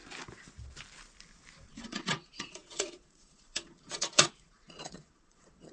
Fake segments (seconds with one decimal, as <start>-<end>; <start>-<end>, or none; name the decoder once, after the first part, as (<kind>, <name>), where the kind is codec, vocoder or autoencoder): 1.8-5.7 (vocoder, Vocos)